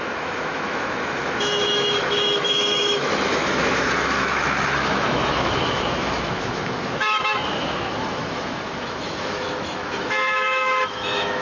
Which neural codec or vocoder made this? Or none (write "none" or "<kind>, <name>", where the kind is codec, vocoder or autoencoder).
autoencoder, DAC-VAE